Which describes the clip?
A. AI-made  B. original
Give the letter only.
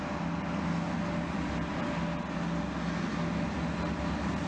B